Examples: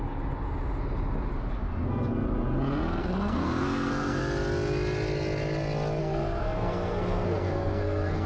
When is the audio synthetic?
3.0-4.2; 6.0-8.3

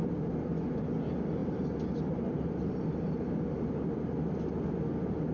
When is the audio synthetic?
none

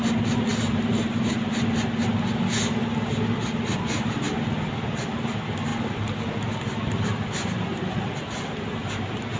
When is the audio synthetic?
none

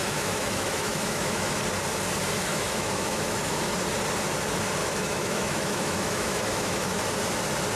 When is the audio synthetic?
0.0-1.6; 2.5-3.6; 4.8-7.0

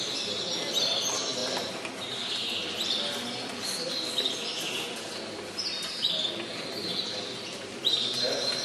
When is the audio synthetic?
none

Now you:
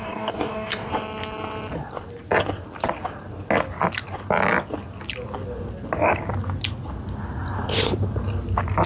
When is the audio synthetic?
0.0-0.9

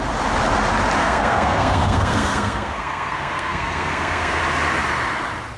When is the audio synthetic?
1.0-4.4